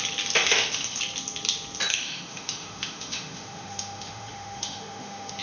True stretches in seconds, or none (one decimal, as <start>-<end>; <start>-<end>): 0.0-0.4; 1.0-1.9